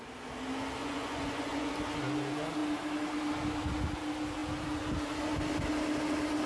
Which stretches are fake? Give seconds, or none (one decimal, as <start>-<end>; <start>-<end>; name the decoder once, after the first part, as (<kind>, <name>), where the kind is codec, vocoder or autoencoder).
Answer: 0.8-1.7 (vocoder, Vocos)